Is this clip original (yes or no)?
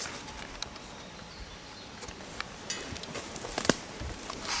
yes